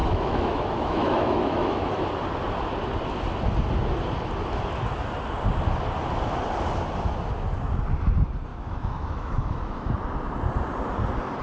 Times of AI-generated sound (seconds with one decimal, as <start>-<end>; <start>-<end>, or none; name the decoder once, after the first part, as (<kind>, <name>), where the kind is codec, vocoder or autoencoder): 0.0-1.9 (autoencoder, DAC-VAE); 8.5-9.9